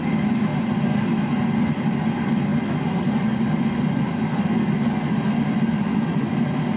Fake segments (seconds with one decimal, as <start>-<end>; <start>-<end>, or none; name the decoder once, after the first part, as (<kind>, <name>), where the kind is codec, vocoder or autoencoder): none